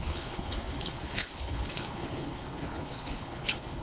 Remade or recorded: remade